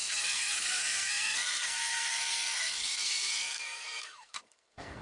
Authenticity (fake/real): fake